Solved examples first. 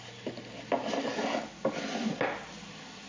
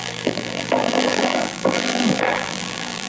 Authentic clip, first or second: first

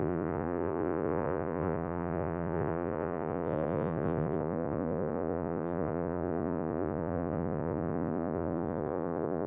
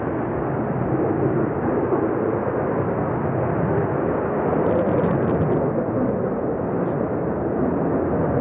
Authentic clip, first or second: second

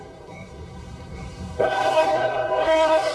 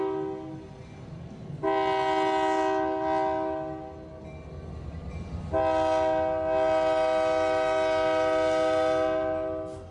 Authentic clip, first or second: second